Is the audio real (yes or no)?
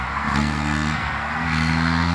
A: no